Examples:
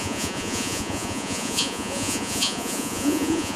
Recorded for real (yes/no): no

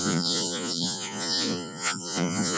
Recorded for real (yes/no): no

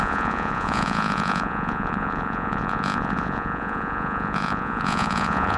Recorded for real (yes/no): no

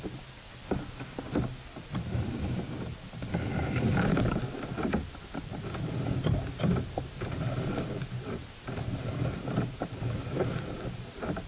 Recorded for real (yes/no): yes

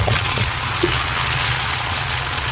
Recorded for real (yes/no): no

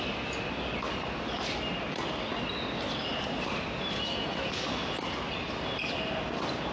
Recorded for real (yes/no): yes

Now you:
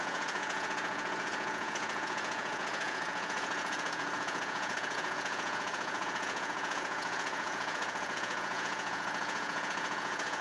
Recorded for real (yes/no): no